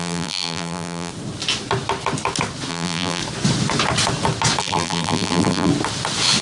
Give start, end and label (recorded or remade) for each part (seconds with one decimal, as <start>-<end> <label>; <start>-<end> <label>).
0.0-1.1 remade; 1.1-2.7 recorded; 2.7-3.2 remade; 3.2-4.6 recorded; 4.6-5.7 remade; 5.7-6.4 recorded